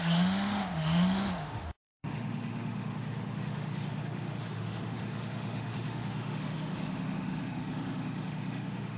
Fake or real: fake